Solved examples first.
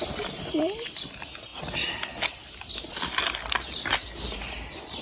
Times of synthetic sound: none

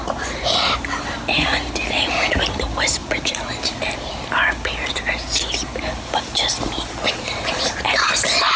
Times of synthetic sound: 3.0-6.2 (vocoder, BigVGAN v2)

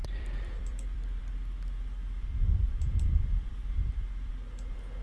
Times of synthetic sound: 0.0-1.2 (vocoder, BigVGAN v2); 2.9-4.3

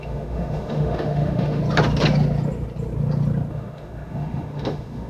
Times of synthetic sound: 0.0-1.6 (autoencoder, DAC-VAE); 3.5-5.1